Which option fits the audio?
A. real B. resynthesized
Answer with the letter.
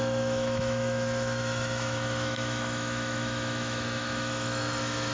B